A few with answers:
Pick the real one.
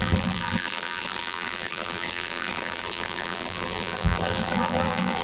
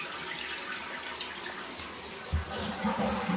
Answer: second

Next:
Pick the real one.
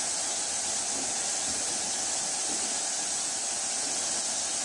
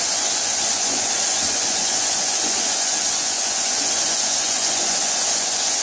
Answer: first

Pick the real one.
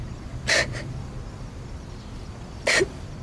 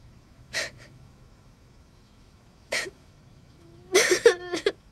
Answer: first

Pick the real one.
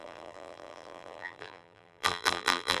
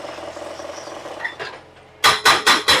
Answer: second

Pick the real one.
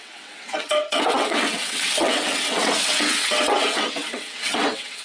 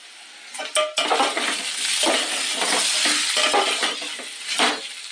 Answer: second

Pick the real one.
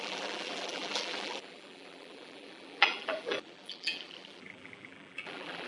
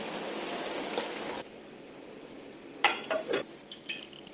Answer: second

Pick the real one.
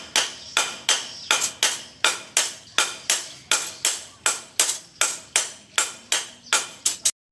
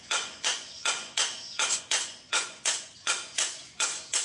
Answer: first